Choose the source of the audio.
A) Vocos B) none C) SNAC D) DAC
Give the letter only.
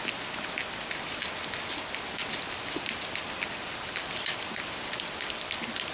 B